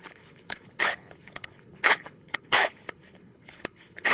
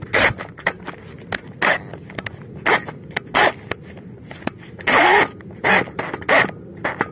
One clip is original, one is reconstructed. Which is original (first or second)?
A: second